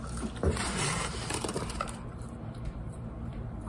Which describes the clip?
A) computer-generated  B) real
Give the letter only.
A